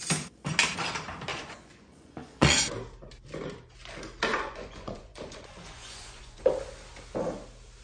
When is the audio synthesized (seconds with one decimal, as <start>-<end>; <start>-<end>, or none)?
1.3-2.6; 4.3-6.4